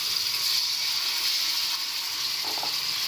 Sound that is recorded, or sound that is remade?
recorded